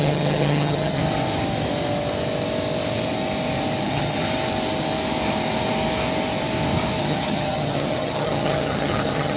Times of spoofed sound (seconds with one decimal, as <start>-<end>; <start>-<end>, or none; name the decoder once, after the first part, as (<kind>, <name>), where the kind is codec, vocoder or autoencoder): 0.0-1.0 (vocoder, HiFi-GAN); 3.8-4.2; 7.0-9.4